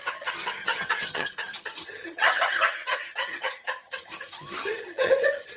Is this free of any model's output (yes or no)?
no